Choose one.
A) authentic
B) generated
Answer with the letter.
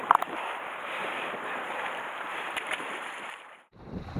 B